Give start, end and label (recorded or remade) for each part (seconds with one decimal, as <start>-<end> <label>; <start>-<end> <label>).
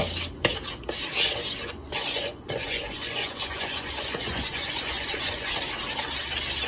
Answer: 0.0-1.6 recorded; 1.6-5.6 remade; 5.6-6.7 recorded